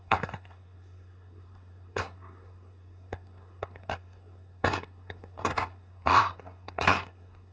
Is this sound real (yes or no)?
no